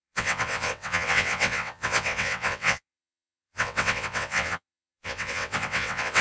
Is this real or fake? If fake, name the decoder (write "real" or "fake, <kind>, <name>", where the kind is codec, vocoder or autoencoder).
fake, vocoder, WaveNeXt